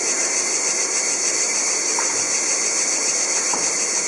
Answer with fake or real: real